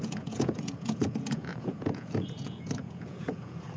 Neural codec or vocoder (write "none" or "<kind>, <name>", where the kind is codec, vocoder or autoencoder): vocoder, Vocos